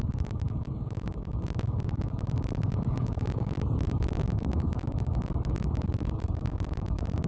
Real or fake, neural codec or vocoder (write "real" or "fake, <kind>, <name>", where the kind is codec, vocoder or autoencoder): fake, codec, DAC